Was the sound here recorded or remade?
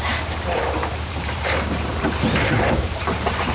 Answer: remade